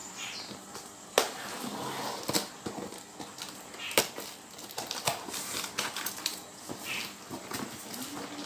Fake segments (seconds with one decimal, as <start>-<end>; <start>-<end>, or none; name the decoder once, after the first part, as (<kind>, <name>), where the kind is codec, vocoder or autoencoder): none